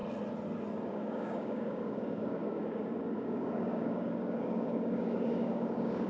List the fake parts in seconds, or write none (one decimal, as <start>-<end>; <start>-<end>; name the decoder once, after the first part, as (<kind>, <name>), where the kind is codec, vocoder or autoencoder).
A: 0.9-6.1 (codec, DAC)